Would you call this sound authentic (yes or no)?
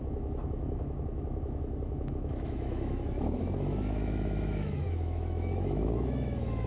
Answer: no